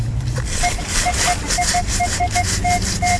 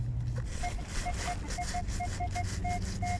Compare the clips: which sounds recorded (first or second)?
second